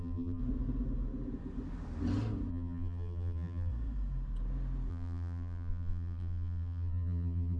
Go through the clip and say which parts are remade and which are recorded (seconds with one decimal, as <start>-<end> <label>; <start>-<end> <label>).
0.0-0.4 remade; 0.4-2.5 recorded; 2.5-3.7 remade; 3.7-4.9 recorded; 4.9-7.6 remade